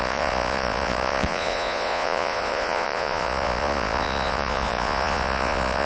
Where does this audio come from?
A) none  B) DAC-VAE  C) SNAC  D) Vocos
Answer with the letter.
D